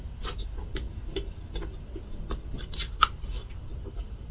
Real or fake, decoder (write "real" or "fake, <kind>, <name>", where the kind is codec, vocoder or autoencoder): real